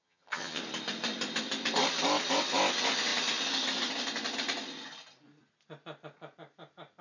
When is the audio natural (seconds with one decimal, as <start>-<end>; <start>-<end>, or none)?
0.6-7.0